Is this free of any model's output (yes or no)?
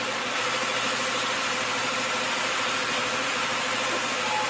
yes